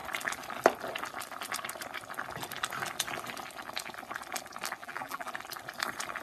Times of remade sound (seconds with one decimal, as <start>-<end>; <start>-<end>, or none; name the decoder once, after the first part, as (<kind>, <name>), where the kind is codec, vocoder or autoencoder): 4.8-5.3 (vocoder, BigVGAN v2)